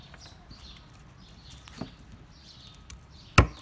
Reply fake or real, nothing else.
real